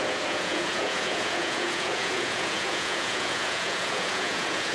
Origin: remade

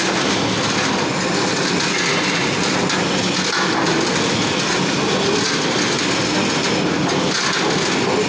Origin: recorded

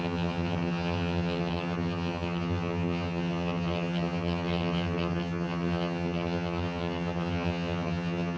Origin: remade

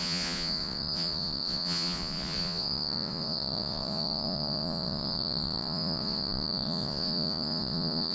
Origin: remade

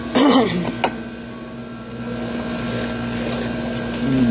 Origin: recorded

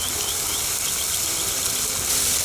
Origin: recorded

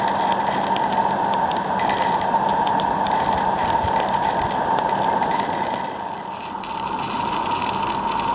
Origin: recorded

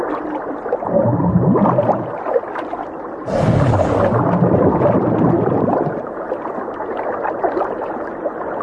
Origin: recorded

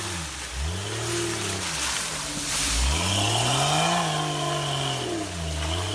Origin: recorded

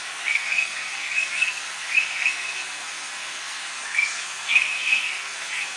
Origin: remade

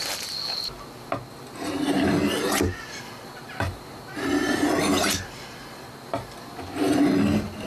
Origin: recorded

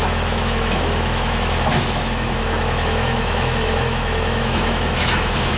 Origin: remade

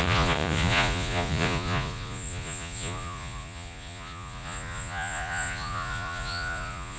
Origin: remade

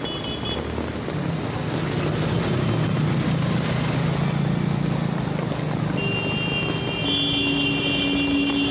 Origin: recorded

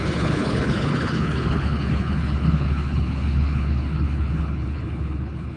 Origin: remade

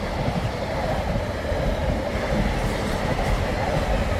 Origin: recorded